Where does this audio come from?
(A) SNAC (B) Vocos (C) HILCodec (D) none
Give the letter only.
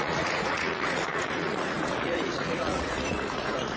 B